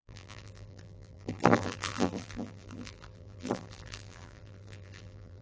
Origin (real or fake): fake